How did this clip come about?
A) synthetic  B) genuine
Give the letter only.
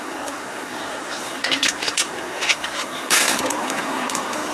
A